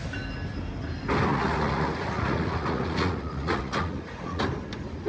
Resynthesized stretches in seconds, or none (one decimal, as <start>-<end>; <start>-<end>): 1.3-4.4